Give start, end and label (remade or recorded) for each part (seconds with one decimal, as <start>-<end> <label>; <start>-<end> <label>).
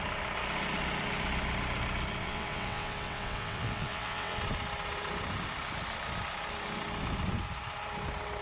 0.0-2.2 recorded; 2.2-4.4 remade; 4.4-8.4 recorded